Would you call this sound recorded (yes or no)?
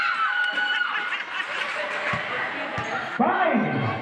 yes